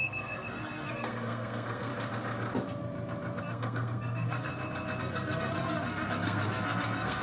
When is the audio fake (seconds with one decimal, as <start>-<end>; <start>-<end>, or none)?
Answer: 0.0-1.9; 3.4-4.5; 5.0-7.2